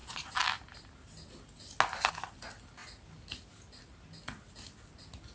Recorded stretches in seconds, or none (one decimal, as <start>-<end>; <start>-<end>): 0.0-5.3